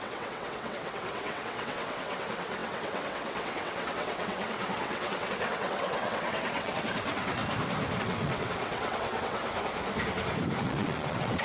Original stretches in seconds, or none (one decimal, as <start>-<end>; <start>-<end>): 7.4-8.0; 9.4-10.6